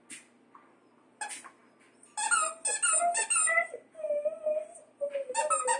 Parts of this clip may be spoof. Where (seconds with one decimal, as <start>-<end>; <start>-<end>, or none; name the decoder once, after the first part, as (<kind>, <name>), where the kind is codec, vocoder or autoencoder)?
none